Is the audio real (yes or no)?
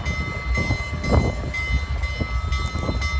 yes